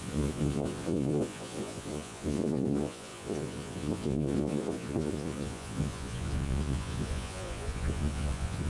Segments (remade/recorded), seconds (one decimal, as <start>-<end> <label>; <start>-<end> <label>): 0.0-8.7 remade